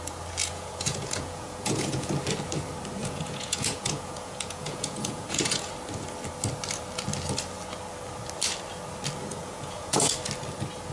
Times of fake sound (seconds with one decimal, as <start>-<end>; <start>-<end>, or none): 0.4-2.1; 3.0-5.7; 9.3-10.1